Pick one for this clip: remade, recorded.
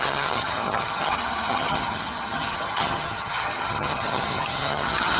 remade